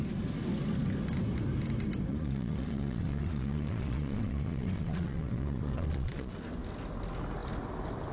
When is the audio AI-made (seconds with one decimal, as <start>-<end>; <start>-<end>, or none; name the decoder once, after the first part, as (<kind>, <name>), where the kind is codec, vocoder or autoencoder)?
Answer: 2.1-6.3 (vocoder, Vocos)